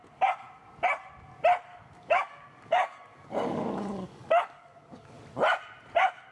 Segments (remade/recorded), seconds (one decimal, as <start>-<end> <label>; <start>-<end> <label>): 0.0-1.7 recorded; 1.7-5.2 remade; 5.2-6.3 recorded